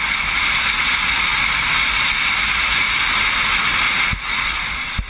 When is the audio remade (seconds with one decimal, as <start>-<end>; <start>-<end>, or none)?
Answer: none